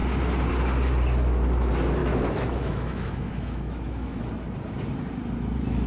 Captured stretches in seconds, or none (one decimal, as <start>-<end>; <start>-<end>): 0.0-2.0; 4.2-5.9